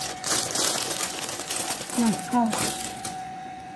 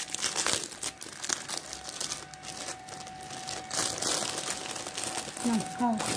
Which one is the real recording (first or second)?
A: second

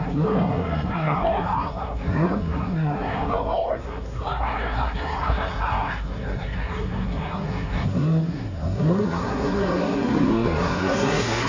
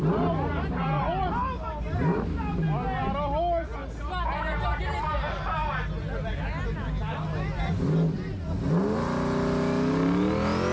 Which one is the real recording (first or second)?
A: second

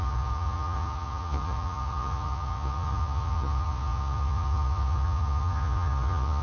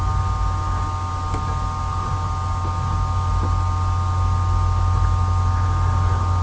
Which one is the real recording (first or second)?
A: second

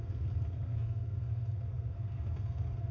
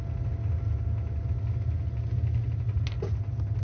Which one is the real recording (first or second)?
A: second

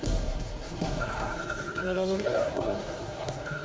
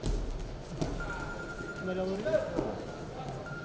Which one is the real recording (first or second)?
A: second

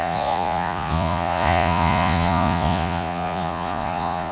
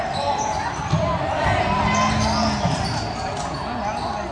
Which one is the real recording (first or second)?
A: second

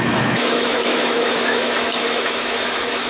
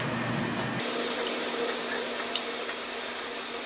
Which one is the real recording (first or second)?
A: second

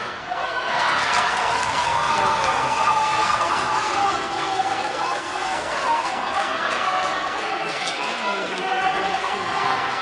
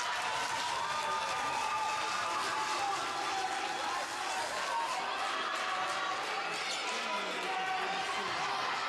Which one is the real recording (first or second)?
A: second